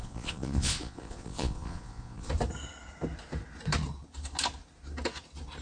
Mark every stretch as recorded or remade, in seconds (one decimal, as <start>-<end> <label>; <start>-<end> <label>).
0.0-2.3 remade; 2.3-5.6 recorded